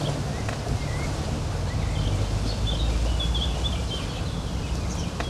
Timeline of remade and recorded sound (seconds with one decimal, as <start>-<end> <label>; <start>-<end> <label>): 0.0-5.3 recorded

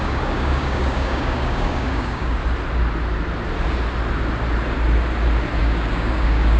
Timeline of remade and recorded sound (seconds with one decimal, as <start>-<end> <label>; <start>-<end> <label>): 0.0-2.4 remade; 2.4-5.6 recorded; 5.6-6.6 remade

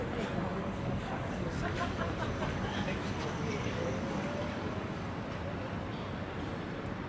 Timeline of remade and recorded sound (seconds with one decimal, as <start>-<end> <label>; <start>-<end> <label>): 0.0-0.5 recorded; 0.5-2.0 remade; 2.0-2.5 recorded; 2.5-5.1 remade; 5.1-7.1 recorded